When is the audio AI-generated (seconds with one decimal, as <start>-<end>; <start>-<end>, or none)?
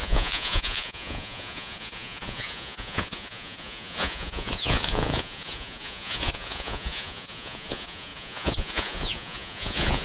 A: 0.0-10.0